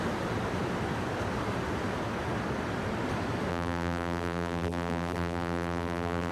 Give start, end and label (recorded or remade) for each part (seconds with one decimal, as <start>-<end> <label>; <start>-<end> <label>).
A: 0.0-3.5 recorded; 3.5-6.3 remade